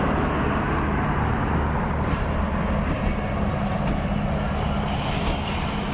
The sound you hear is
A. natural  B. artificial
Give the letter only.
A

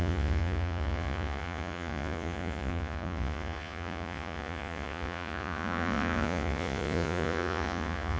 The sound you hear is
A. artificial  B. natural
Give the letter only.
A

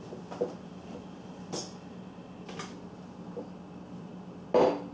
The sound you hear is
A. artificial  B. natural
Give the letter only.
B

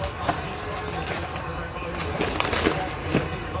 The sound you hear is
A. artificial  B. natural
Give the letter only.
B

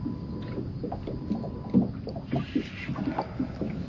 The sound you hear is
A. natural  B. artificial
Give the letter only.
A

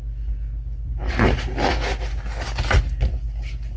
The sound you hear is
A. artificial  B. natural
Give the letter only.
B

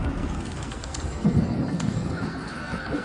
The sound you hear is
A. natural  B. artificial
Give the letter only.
B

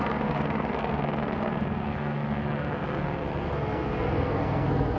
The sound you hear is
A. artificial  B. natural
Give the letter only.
A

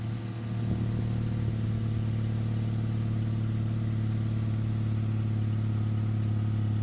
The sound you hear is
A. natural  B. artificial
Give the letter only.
A